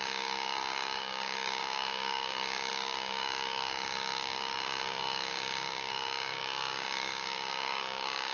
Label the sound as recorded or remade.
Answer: remade